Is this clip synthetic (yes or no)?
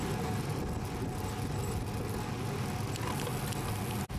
no